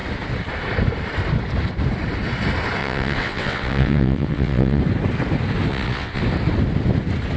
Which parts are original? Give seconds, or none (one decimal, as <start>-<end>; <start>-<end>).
0.0-2.8; 4.8-5.7; 6.2-7.4